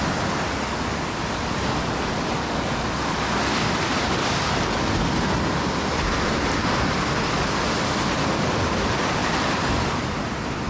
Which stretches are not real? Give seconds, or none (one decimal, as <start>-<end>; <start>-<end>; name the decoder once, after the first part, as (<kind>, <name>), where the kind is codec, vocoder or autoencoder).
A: none